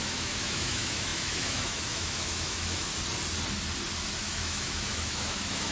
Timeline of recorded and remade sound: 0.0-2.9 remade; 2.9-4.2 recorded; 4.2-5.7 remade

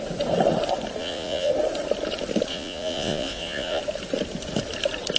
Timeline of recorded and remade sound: 0.0-1.0 recorded; 1.0-1.5 remade; 1.5-2.5 recorded; 2.5-3.8 remade; 3.8-5.2 recorded

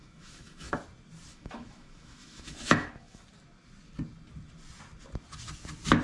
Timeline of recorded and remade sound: 0.0-0.7 remade; 0.7-1.3 recorded; 1.3-3.2 remade; 3.2-6.0 recorded

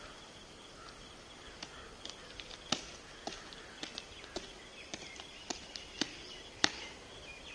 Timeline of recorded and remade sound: 0.0-4.7 recorded; 4.7-6.7 remade; 6.7-7.5 recorded

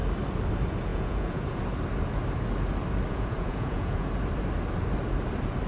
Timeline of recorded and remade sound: 0.0-0.9 recorded; 0.9-1.6 remade; 1.6-3.1 recorded; 3.1-4.1 remade; 4.1-5.7 recorded

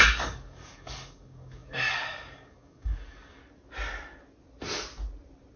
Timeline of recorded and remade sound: 0.0-3.4 remade; 3.4-5.6 recorded

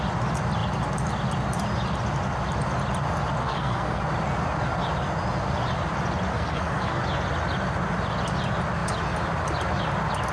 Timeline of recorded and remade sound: 0.0-3.4 recorded; 3.4-4.0 remade; 4.0-6.3 recorded; 6.3-7.0 remade; 7.0-10.3 recorded